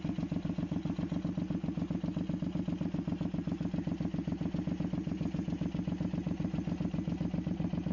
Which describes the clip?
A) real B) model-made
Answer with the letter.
A